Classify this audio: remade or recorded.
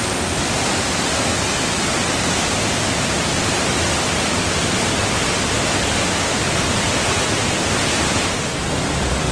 recorded